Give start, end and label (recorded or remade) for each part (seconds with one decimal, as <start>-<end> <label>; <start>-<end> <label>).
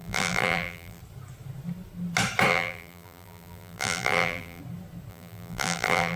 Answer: 0.0-1.0 remade; 1.0-2.5 recorded; 2.5-4.6 remade; 4.6-5.1 recorded; 5.1-6.2 remade